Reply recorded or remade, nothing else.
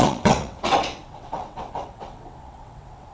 remade